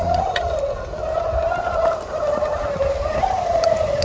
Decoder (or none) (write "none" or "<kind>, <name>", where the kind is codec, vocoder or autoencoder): none